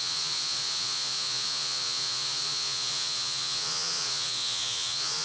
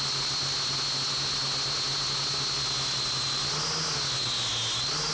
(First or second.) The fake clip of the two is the first